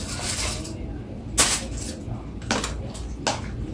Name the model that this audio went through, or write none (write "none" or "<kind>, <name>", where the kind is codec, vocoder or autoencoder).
none